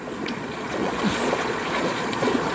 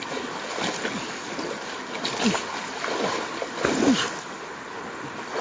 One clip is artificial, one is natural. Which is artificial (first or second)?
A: first